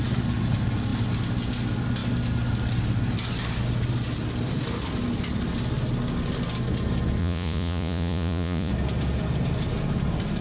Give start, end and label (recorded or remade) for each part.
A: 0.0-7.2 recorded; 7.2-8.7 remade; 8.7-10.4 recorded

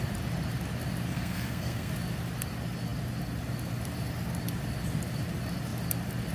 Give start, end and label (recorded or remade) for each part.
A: 0.0-1.1 recorded; 1.1-1.9 remade; 1.9-6.3 recorded

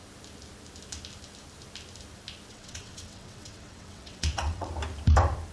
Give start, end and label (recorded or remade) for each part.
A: 0.0-2.5 recorded; 2.5-4.7 remade; 4.7-5.5 recorded

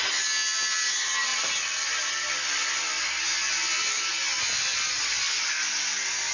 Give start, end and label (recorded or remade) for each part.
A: 0.0-6.3 recorded

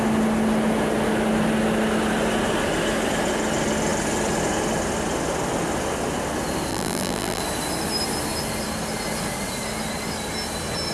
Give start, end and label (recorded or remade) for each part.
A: 0.0-6.7 recorded; 6.7-7.4 remade; 7.4-10.9 recorded

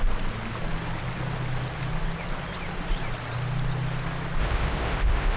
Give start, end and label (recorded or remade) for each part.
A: 0.0-4.4 recorded; 4.4-5.4 remade

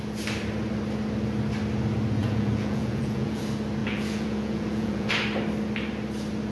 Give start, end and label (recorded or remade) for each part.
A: 0.0-2.2 recorded; 2.2-3.4 remade; 3.4-3.8 recorded; 3.8-5.1 remade; 5.1-6.5 recorded

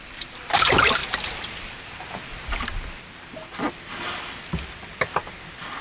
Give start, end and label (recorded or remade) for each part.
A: 0.0-5.8 recorded